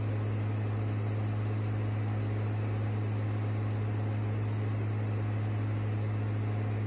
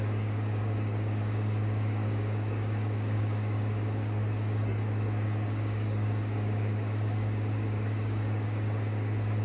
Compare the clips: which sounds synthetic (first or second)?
second